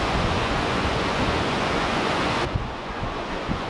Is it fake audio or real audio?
fake